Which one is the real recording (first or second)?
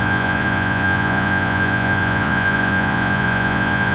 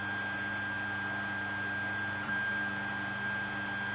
second